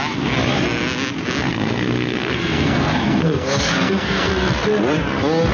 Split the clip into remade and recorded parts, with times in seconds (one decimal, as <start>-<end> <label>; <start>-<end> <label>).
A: 0.0-1.5 recorded; 1.5-4.3 remade; 4.3-5.5 recorded